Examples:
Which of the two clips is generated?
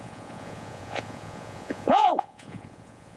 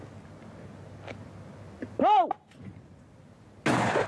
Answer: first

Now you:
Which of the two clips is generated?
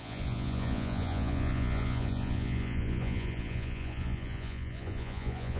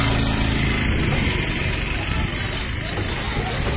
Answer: first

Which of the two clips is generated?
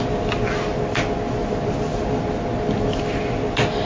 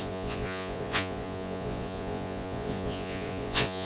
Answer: second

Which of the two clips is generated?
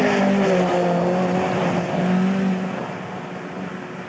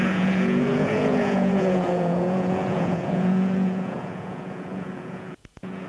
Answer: second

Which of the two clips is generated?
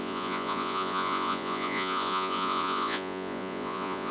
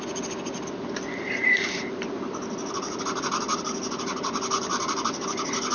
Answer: first